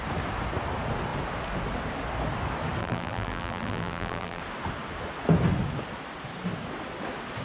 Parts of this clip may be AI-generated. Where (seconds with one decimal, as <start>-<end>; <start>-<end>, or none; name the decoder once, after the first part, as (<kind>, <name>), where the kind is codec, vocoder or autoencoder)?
2.8-4.4 (vocoder, BigVGAN v2)